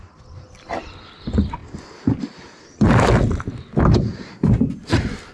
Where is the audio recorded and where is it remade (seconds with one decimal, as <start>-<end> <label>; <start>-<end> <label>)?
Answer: 0.0-5.3 recorded